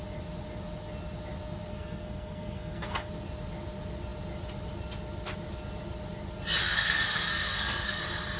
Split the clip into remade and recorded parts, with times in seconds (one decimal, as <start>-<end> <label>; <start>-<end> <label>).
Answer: 0.0-1.7 recorded; 1.7-3.1 remade; 3.1-6.6 recorded; 6.6-8.0 remade; 8.0-8.4 recorded

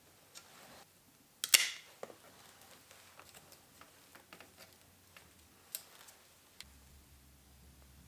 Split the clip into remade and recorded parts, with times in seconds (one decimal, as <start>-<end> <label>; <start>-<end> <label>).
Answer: 0.0-8.1 recorded

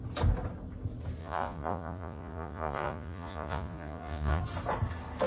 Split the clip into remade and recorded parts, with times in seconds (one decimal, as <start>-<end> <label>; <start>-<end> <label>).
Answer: 0.0-1.2 recorded; 1.2-4.4 remade; 4.4-5.3 recorded